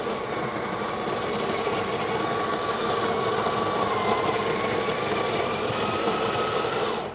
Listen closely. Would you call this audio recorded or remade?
recorded